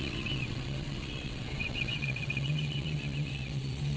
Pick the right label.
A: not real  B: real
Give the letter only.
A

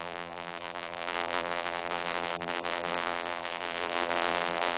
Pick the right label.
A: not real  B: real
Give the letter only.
A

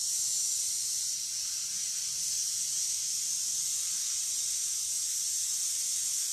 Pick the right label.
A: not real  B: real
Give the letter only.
B